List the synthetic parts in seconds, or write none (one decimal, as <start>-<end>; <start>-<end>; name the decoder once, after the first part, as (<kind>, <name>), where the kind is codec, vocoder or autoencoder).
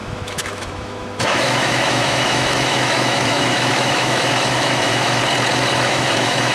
0.0-5.2 (autoencoder, DAC-VAE); 5.7-6.5